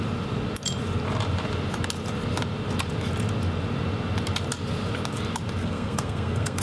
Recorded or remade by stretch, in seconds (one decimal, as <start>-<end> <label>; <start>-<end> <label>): 0.0-5.6 recorded; 5.6-6.6 remade